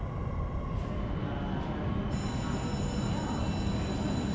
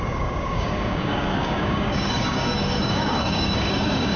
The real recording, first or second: first